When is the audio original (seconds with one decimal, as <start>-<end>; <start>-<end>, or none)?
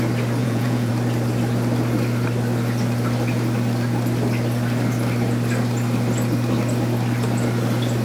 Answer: 0.0-0.4; 0.9-8.0